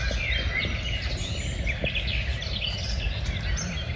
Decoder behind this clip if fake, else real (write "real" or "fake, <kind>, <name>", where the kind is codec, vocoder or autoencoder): real